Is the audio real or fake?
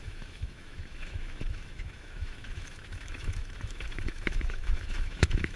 fake